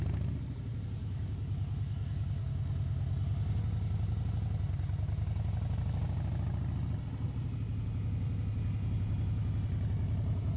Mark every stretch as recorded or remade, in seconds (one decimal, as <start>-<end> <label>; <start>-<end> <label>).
0.0-1.0 recorded; 1.0-2.5 remade; 2.5-10.6 recorded